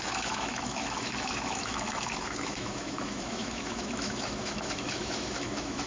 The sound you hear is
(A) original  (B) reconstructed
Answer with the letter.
B